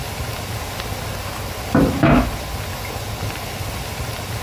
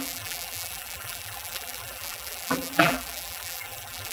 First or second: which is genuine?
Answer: first